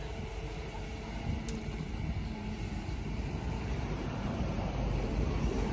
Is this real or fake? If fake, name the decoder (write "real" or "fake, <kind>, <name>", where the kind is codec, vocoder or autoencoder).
fake, vocoder, BigVGAN v2